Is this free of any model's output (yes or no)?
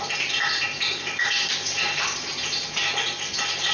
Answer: yes